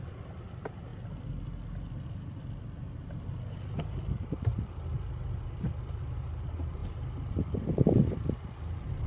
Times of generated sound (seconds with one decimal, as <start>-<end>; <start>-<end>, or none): none